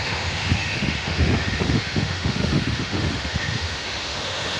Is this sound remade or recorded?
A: remade